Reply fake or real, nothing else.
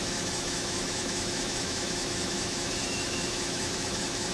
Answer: fake